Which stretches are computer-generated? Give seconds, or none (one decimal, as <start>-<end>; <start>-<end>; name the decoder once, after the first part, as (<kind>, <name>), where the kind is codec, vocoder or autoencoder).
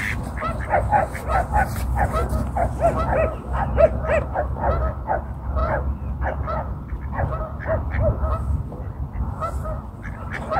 none